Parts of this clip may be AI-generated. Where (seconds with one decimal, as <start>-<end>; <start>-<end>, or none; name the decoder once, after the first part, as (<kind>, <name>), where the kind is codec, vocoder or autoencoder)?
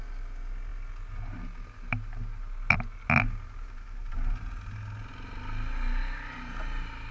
none